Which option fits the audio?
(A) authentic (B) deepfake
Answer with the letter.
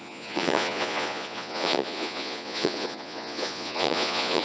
B